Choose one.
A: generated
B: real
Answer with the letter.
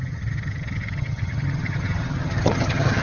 A